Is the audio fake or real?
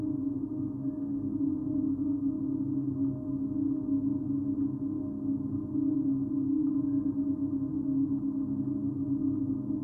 real